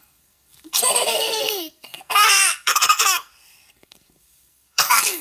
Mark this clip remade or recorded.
remade